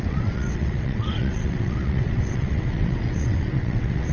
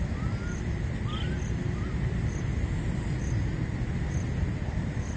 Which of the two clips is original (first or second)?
second